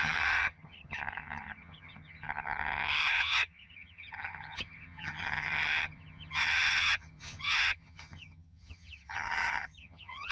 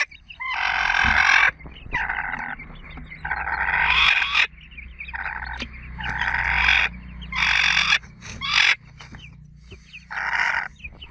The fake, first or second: first